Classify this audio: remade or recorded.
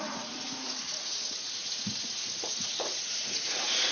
remade